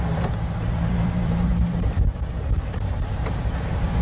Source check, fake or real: fake